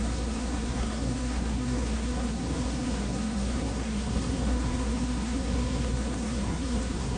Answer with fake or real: fake